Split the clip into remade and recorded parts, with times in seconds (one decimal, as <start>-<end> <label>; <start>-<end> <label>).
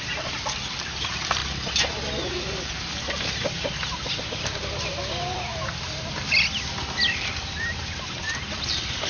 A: 0.0-1.4 remade; 1.4-1.9 recorded; 1.9-5.5 remade; 5.5-6.7 recorded; 6.7-9.1 remade